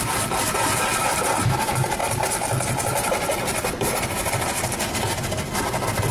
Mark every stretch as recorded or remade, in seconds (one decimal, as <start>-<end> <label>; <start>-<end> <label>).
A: 0.0-6.1 recorded